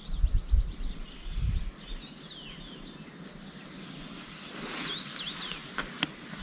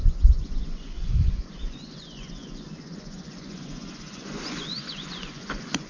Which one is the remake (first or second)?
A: second